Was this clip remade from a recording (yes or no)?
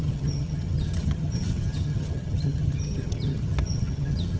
yes